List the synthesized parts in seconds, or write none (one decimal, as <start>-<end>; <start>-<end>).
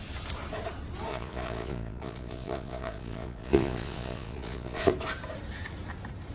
1.1-4.9